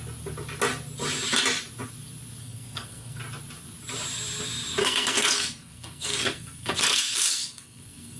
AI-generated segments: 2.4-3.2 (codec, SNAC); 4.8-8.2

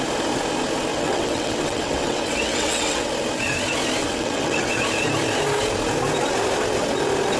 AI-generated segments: 0.9-3.1 (vocoder, WaveNeXt); 4.0-4.7

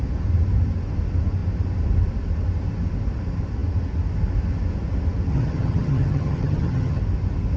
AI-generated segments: 5.3-7.0 (vocoder, HiFi-GAN)

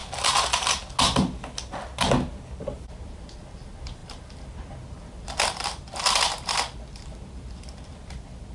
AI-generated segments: 2.6-8.5 (vocoder, BigVGAN v2)

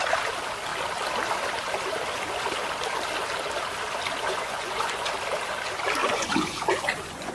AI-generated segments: 4.3-5.1 (vocoder, Vocos); 6.0-7.3

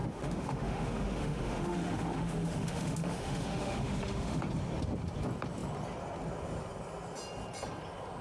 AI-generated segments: 0.0-4.4 (autoencoder, DAC-VAE)

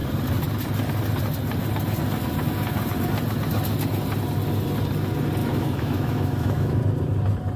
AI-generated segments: 5.4-6.8 (autoencoder, DAC-VAE)